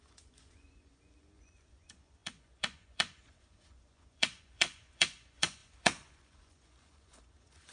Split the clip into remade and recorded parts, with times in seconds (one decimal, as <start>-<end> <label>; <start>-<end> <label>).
0.0-7.7 remade